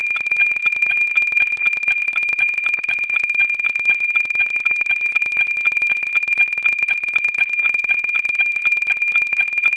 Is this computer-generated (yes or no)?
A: yes